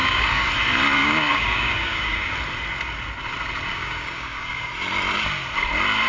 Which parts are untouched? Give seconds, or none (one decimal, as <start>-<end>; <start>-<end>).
0.5-1.0; 2.3-3.7; 4.7-6.1